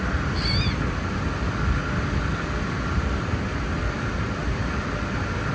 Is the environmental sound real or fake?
real